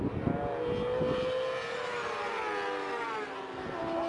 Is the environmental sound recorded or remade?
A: recorded